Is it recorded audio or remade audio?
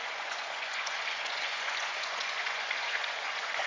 remade